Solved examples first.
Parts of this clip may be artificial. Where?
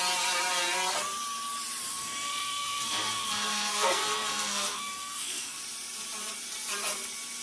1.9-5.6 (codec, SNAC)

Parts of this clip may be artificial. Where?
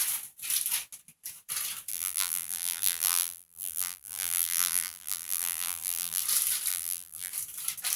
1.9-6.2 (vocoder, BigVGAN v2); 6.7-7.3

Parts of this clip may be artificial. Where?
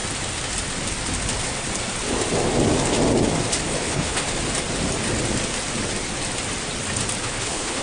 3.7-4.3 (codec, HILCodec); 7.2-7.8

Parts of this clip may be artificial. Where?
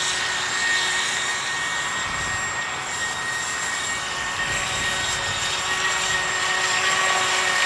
none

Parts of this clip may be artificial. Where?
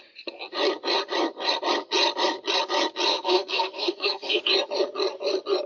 3.1-4.4 (codec, SNAC)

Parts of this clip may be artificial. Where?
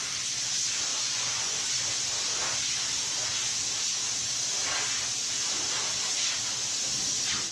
0.9-1.5 (vocoder, Vocos)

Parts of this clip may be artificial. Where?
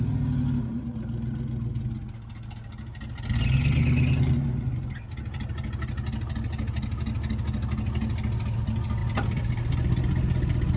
none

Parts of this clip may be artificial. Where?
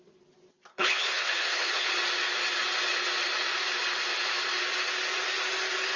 0.7-1.9 (codec, HILCodec)